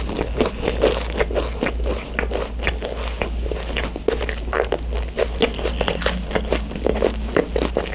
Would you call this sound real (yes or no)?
yes